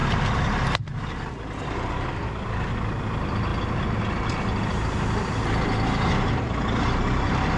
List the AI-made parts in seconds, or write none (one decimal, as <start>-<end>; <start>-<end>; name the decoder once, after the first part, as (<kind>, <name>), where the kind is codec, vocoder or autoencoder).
none